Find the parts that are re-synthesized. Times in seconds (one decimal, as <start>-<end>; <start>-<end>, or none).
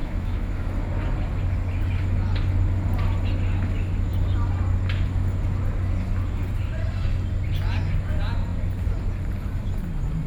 0.0-0.7